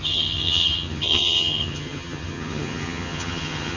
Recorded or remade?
remade